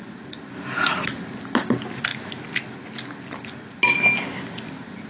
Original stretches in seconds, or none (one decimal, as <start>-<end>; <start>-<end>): 0.0-5.1